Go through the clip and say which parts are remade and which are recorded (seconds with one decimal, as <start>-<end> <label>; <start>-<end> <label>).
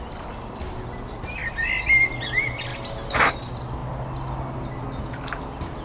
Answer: 0.0-5.8 recorded